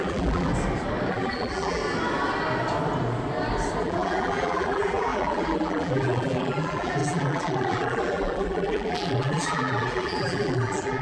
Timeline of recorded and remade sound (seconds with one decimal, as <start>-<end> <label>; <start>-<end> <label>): 0.0-0.5 remade; 0.5-1.1 recorded; 1.1-1.8 remade; 1.8-3.8 recorded; 3.8-11.0 remade